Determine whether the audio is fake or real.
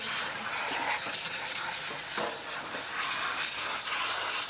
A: real